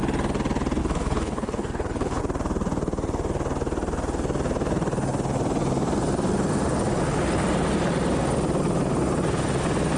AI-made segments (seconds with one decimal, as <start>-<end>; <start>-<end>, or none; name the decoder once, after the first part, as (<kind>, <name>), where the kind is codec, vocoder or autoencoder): 0.8-2.2 (codec, HILCodec)